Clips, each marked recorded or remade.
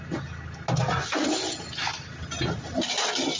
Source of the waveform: recorded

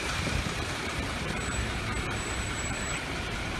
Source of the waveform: remade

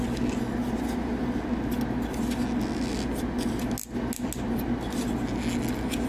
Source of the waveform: recorded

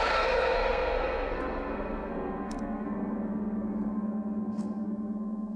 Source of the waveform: remade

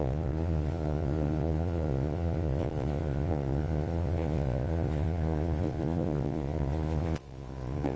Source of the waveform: remade